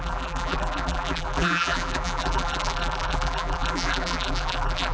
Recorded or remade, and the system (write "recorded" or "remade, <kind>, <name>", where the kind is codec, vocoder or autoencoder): remade, vocoder, BigVGAN v2